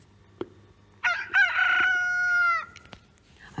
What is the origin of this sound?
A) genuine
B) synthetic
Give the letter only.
A